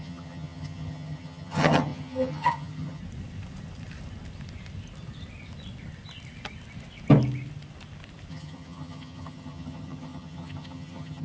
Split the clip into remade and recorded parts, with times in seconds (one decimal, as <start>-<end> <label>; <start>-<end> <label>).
0.0-3.0 remade; 3.0-8.3 recorded; 8.3-11.2 remade

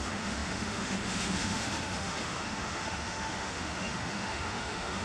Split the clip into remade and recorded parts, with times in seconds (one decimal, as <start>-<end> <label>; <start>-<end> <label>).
0.0-5.0 remade